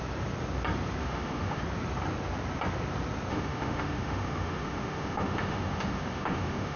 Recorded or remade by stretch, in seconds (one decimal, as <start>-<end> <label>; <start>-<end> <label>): 0.0-1.0 recorded; 1.0-1.6 remade; 1.6-3.3 recorded; 3.3-6.8 remade